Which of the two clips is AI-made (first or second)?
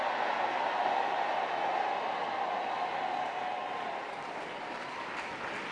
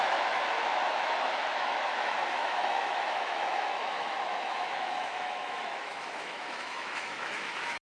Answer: second